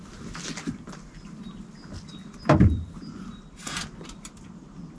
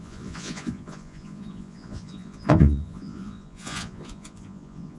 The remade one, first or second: second